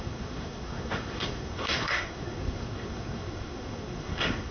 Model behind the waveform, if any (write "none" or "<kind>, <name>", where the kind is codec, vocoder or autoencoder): codec, SNAC